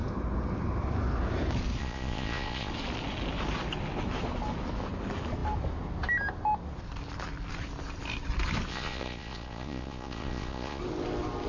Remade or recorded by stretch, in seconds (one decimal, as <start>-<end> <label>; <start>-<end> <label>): 0.0-1.8 recorded; 1.8-2.7 remade; 2.7-8.7 recorded; 8.7-10.8 remade; 10.8-11.5 recorded